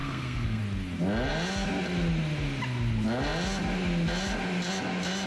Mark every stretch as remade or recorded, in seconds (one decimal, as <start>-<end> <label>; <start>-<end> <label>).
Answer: 0.0-0.6 remade; 0.6-5.3 recorded